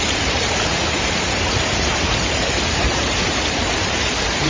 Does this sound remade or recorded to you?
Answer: remade